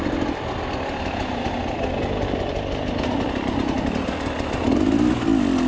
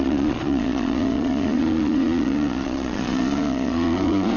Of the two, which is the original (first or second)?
first